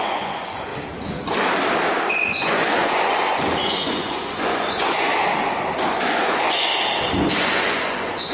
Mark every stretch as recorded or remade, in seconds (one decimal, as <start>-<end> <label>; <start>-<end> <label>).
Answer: 0.0-0.7 remade; 0.7-2.1 recorded; 2.1-5.1 remade; 5.1-5.9 recorded; 5.9-6.7 remade; 6.7-7.4 recorded; 7.4-8.3 remade